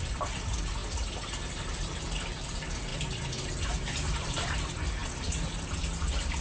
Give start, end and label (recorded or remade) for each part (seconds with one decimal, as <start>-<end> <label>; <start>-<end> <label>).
0.0-0.8 remade; 0.8-1.4 recorded; 1.4-5.0 remade; 5.0-5.7 recorded; 5.7-6.4 remade